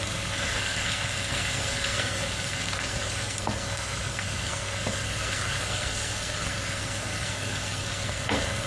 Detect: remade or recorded remade